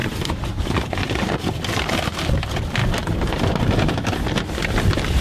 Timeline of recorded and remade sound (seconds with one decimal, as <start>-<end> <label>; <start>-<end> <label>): 0.0-0.9 remade; 0.9-5.2 recorded